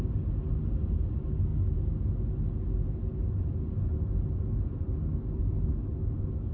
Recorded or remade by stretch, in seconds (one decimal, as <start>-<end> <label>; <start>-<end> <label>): 0.0-6.5 recorded